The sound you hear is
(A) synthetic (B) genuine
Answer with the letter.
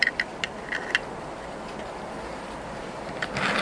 B